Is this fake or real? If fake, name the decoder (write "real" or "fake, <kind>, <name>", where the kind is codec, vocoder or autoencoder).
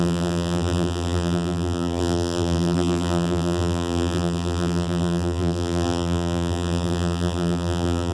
fake, vocoder, BigVGAN v2